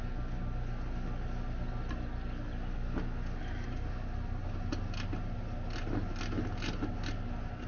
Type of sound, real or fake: real